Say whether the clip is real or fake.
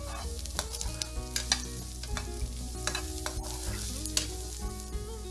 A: real